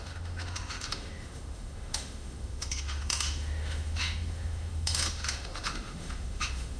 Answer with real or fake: fake